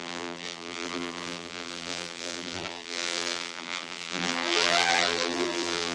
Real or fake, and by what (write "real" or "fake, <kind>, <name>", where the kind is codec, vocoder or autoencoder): fake, vocoder, BigVGAN v2